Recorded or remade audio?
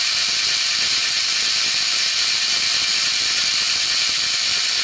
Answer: recorded